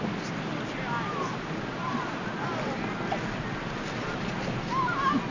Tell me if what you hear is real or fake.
real